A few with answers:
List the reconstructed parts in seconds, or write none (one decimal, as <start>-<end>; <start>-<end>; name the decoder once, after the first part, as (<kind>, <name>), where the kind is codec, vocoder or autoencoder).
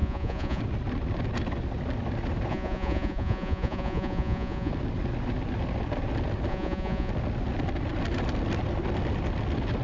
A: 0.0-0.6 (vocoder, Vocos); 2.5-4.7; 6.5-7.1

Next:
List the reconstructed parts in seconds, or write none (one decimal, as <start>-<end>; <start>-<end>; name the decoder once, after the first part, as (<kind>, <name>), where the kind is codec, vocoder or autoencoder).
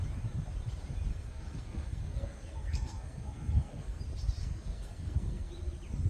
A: 1.1-4.0 (codec, SNAC); 4.4-5.5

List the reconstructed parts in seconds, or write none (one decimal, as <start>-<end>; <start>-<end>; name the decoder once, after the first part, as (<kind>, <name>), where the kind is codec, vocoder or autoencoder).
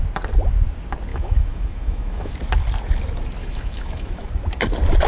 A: 1.1-2.3 (autoencoder, DAC-VAE); 3.4-4.3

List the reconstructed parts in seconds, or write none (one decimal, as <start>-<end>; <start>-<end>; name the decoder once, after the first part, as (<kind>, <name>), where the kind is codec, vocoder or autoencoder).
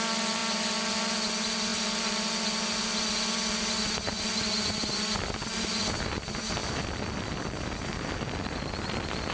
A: none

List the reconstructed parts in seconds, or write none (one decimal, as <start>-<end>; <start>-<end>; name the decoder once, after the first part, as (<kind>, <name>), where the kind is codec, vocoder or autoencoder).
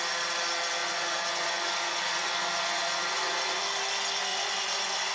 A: 0.8-3.6 (vocoder, Vocos); 4.3-5.1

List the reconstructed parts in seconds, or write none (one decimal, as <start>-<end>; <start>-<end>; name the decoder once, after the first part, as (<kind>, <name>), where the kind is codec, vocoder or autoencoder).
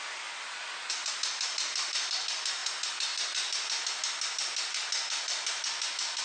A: none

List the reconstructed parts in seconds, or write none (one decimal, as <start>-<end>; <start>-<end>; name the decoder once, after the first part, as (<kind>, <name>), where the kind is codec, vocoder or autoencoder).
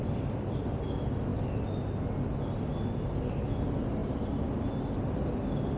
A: none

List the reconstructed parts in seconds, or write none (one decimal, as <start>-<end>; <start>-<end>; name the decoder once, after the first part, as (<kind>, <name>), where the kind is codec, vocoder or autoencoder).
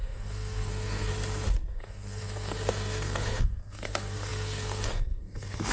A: 0.0-1.1 (codec, SNAC); 1.7-5.7